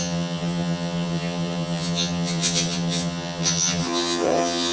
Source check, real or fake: fake